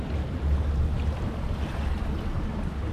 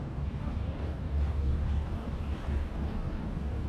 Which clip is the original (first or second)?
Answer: first